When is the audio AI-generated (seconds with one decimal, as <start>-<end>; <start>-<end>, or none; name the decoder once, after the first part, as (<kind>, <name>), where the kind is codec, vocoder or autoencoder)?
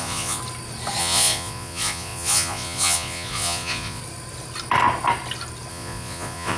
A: 0.0-0.4 (vocoder, Vocos); 1.0-4.0; 5.7-6.6